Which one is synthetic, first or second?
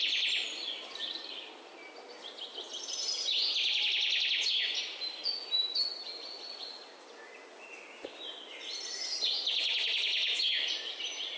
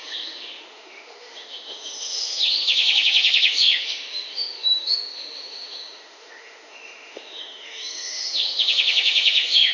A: second